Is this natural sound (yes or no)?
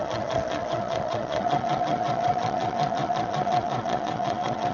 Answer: no